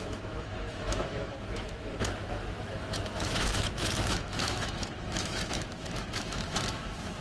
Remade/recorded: remade